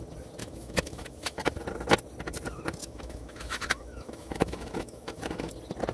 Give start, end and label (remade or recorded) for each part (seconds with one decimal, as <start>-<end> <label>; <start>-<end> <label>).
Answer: 0.0-0.4 recorded; 0.4-1.4 remade; 1.4-2.8 recorded; 2.8-5.5 remade; 5.5-5.9 recorded